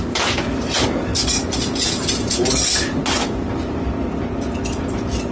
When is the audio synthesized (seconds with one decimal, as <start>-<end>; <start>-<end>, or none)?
none